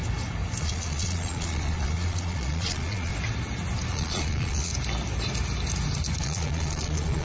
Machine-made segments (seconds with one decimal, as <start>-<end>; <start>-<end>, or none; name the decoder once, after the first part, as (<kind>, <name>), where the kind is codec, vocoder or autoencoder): 0.6-3.1 (vocoder, Vocos); 3.9-4.7; 6.2-7.2